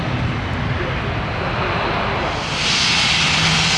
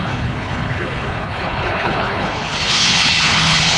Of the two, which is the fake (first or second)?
second